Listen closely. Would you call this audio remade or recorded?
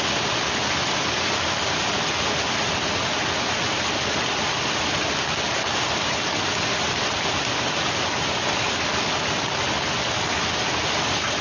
recorded